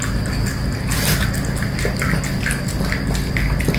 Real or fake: real